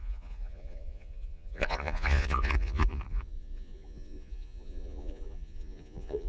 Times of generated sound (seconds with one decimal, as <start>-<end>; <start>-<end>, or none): 0.0-6.3